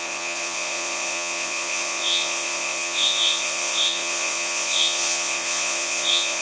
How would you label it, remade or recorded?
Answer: remade